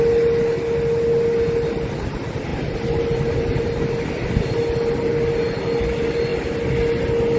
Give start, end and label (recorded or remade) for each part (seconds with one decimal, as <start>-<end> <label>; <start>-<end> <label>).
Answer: 0.0-7.4 recorded